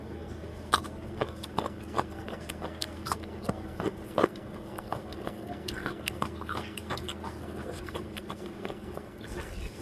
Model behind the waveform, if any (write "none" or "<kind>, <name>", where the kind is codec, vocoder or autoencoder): codec, SNAC